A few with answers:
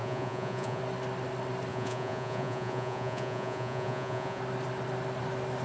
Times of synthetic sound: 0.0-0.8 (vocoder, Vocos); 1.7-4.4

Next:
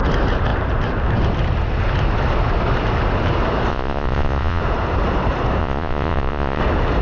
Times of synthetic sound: 3.7-4.6 (vocoder, Vocos); 5.6-6.6

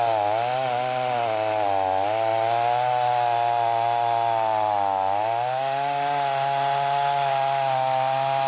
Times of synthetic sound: none

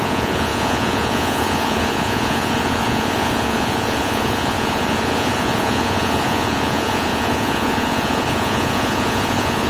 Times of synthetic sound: 0.0-9.7 (vocoder, Vocos)